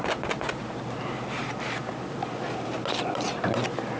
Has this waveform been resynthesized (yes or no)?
no